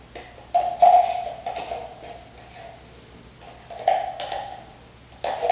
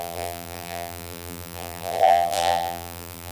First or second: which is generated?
second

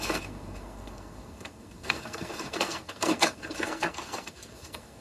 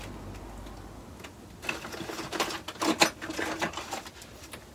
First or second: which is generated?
first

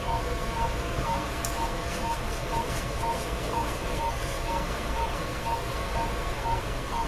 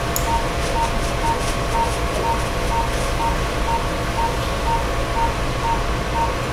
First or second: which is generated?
first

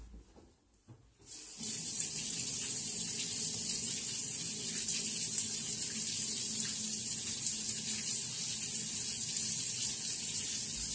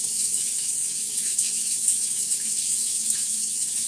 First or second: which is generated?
second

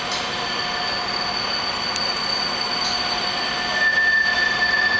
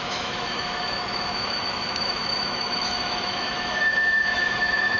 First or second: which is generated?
second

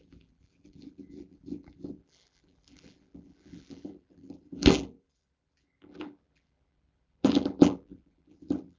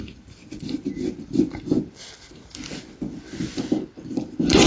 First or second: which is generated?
first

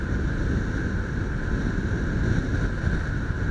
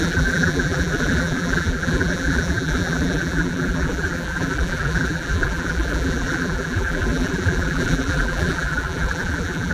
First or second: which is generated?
second